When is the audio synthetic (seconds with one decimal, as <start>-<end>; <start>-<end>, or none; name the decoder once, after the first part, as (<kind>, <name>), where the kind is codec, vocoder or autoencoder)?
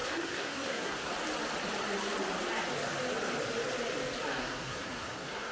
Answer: 0.0-1.1 (codec, SNAC); 4.4-5.5